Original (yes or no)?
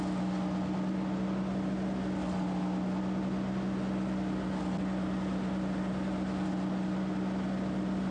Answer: yes